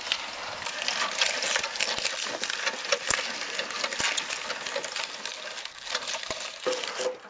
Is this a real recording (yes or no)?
yes